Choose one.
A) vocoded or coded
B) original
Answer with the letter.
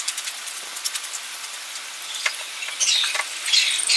B